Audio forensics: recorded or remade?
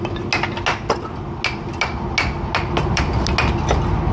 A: recorded